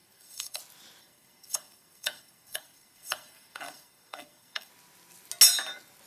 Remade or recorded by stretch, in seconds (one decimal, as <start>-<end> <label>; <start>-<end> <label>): 0.0-0.6 remade; 0.6-1.0 recorded; 1.0-4.7 remade; 4.7-6.1 recorded